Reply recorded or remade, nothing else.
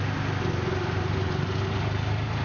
recorded